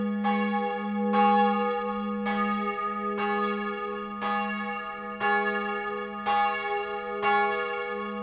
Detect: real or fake real